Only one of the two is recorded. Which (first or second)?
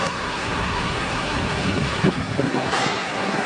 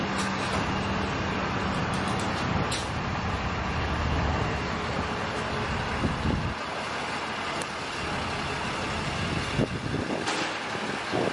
second